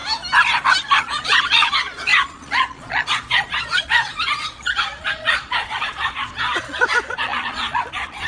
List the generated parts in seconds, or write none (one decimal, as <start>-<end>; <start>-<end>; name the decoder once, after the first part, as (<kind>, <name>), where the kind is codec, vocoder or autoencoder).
1.0-8.3 (vocoder, Vocos)